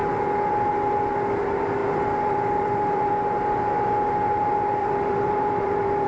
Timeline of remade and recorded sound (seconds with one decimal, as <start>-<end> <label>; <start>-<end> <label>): 0.0-1.8 recorded; 1.8-3.1 remade; 3.1-4.8 recorded; 4.8-6.1 remade